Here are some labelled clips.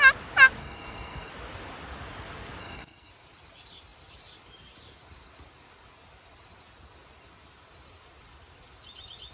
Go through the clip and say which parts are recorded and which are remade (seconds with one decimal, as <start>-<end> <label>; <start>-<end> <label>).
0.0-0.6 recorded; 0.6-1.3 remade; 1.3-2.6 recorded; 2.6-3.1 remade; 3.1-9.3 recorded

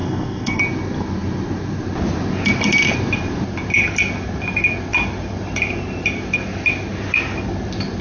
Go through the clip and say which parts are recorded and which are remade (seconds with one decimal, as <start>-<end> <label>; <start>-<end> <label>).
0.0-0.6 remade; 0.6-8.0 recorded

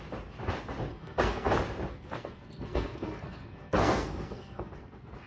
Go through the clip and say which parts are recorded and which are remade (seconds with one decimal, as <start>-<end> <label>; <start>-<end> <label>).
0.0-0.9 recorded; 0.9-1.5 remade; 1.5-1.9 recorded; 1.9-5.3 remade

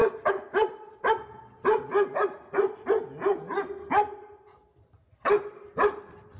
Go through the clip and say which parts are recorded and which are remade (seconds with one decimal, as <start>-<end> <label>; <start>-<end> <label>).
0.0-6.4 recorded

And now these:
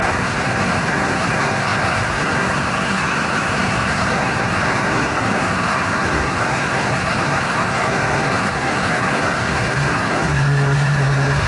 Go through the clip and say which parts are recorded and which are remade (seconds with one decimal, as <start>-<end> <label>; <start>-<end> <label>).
0.0-11.5 remade